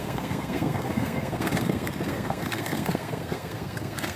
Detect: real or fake fake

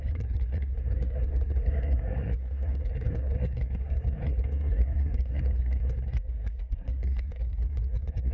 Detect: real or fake fake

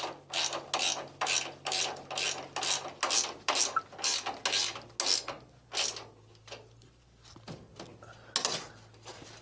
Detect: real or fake real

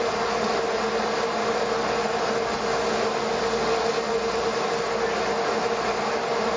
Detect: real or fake real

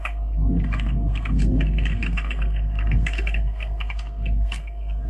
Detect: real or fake fake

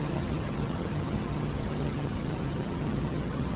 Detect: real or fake fake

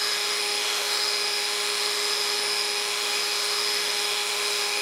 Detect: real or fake fake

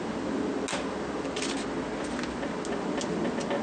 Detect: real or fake real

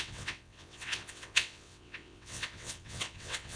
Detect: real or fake fake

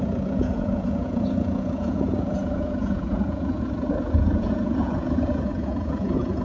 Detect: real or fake fake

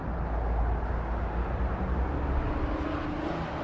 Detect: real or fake real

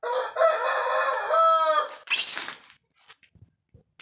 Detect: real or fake real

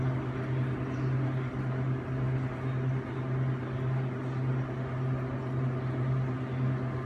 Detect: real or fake real